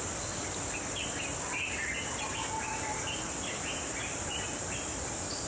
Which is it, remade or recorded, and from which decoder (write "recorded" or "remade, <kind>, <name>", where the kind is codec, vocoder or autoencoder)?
recorded